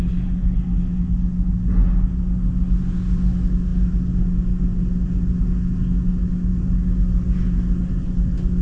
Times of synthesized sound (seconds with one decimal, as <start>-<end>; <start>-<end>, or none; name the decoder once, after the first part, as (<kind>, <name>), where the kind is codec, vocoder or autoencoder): none